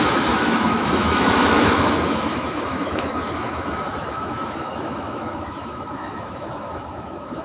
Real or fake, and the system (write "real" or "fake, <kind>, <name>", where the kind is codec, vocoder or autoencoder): fake, autoencoder, DAC-VAE